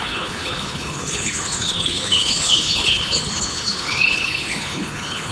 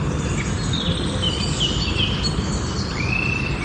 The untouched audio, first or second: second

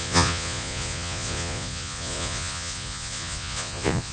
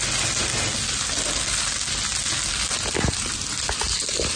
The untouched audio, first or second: second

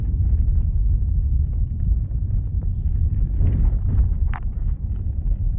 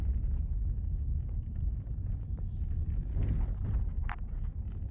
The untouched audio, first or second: second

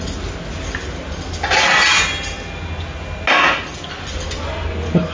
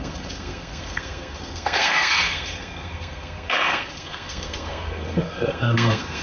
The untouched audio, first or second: first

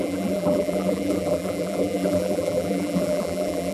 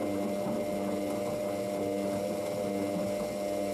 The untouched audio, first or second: second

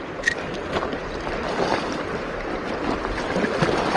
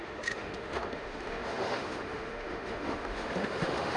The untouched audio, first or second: first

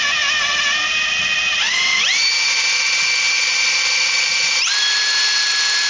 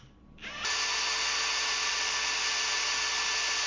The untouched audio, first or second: second